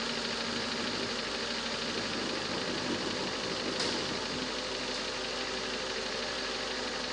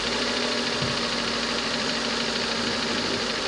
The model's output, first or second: second